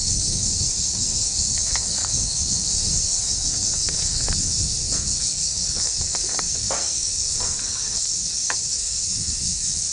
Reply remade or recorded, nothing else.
remade